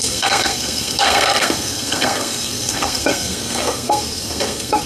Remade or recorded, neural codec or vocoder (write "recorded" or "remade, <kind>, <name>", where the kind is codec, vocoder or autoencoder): remade, codec, SNAC